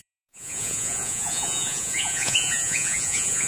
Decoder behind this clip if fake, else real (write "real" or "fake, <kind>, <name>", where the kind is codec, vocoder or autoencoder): fake, vocoder, Vocos